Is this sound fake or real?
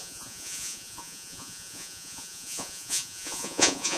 fake